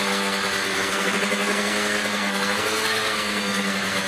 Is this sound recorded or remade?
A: remade